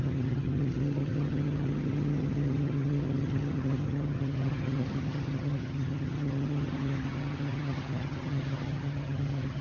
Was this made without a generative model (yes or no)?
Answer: no